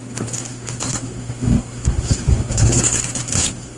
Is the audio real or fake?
fake